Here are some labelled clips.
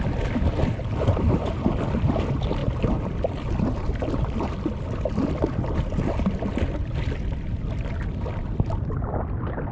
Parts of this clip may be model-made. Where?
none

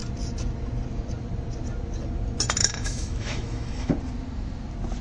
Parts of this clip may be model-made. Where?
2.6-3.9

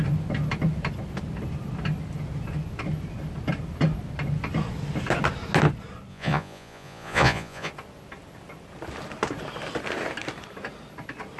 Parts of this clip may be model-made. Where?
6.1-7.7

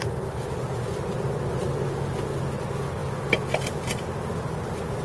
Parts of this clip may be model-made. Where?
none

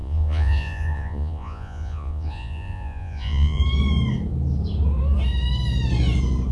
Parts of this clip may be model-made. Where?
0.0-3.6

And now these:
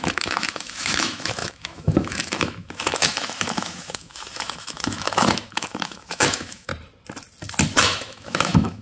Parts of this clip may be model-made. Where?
0.0-6.7; 7.8-8.8